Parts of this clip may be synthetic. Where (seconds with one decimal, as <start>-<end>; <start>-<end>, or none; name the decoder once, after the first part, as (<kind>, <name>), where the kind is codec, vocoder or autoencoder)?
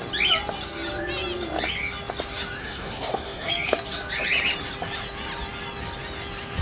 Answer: 2.6-3.5 (codec, SNAC)